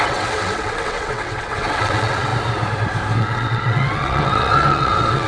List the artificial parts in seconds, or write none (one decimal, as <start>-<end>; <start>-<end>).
0.0-2.3; 3.2-5.3